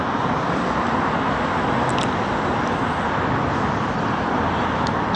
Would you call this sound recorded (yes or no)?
yes